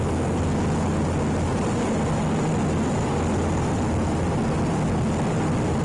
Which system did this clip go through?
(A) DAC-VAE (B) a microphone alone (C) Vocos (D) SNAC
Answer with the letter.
B